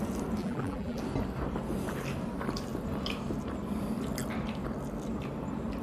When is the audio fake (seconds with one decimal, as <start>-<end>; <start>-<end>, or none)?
0.4-1.0